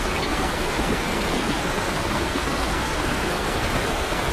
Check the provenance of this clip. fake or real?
fake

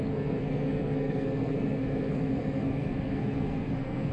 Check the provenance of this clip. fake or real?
fake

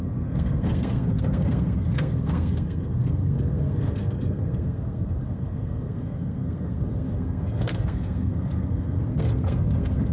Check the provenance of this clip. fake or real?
fake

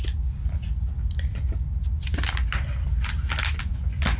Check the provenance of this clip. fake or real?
real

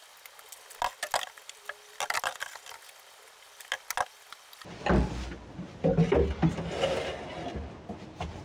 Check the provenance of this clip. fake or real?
real